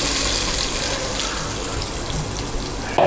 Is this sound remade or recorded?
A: recorded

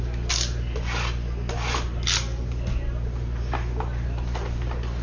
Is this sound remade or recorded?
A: recorded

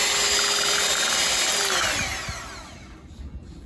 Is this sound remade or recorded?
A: recorded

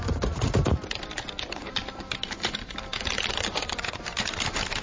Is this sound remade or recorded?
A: remade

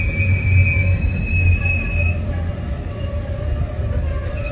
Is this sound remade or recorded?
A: recorded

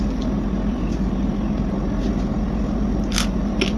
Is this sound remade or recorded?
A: recorded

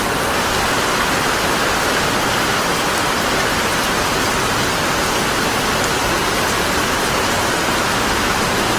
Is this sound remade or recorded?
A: recorded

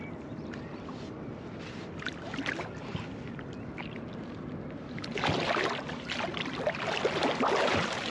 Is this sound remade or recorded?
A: recorded